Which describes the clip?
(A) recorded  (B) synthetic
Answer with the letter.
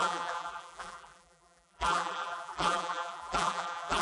B